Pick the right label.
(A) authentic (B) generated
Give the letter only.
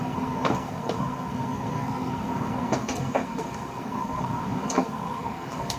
B